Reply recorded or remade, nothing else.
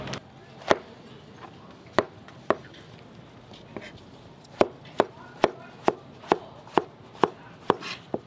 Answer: recorded